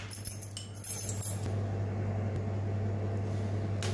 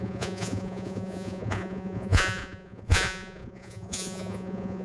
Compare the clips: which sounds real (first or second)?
first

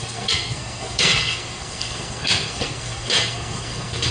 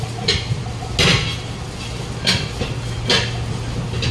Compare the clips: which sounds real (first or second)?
second